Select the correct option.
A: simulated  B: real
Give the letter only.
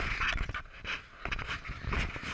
B